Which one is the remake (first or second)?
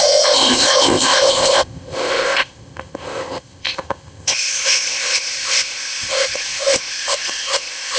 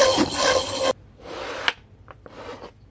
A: first